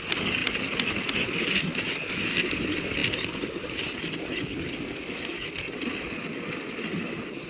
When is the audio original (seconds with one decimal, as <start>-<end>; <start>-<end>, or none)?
0.0-7.5